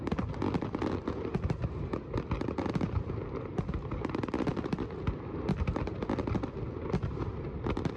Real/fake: real